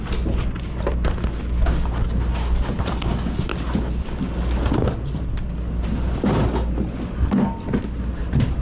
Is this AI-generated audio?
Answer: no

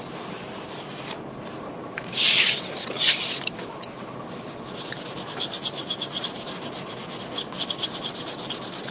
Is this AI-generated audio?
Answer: no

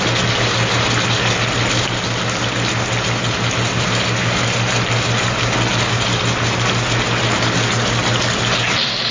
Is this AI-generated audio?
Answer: no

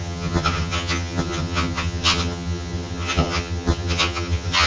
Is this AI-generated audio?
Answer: yes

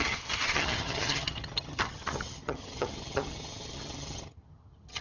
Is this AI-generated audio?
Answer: yes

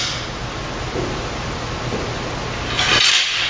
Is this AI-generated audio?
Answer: no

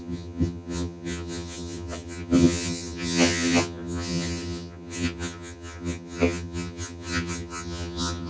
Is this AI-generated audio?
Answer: yes